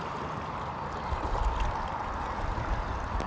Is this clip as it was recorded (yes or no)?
yes